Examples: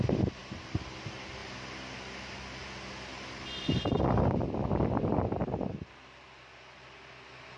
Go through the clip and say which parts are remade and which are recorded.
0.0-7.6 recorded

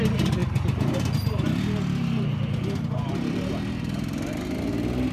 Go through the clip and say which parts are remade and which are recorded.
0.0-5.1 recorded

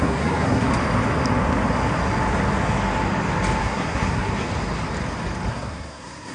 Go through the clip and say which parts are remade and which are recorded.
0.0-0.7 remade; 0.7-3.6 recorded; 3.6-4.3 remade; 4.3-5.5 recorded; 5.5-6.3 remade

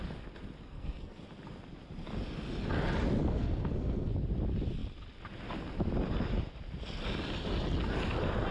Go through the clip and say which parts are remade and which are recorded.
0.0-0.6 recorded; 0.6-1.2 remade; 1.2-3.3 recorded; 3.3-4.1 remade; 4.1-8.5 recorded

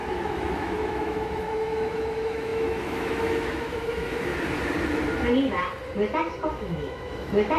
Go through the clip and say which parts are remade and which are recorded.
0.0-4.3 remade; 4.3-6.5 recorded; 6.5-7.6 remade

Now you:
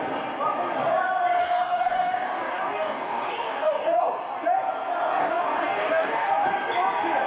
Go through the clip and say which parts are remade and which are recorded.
0.0-1.4 recorded; 1.4-4.0 remade; 4.0-5.2 recorded; 5.2-6.3 remade; 6.3-7.3 recorded

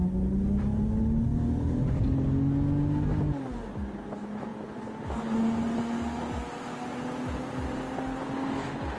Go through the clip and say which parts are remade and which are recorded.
0.0-9.0 recorded

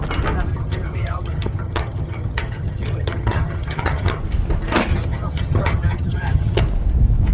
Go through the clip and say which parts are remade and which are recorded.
0.0-0.5 recorded; 0.5-4.2 remade; 4.2-4.9 recorded; 4.9-6.6 remade; 6.6-7.3 recorded